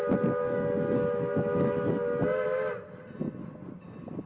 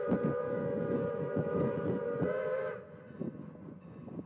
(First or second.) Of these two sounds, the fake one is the second